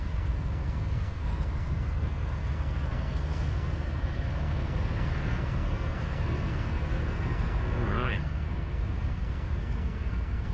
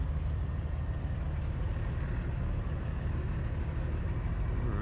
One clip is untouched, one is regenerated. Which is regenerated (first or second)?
first